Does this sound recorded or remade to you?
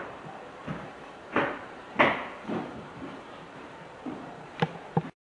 remade